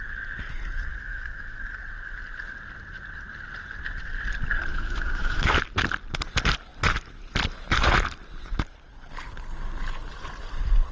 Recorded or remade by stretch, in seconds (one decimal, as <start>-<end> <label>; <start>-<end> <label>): 0.0-0.9 recorded; 0.9-1.6 remade; 1.6-4.7 recorded; 4.7-5.5 remade; 5.5-10.9 recorded